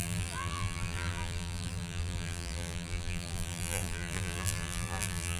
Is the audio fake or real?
fake